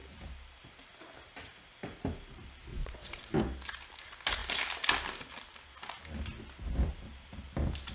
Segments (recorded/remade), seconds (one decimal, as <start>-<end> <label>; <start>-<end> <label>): 0.0-2.7 recorded; 2.7-3.2 remade; 3.2-7.9 recorded